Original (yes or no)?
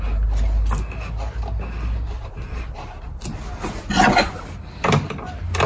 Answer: yes